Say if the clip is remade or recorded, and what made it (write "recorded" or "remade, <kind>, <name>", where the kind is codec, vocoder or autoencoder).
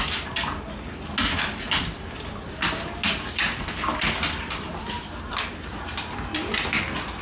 recorded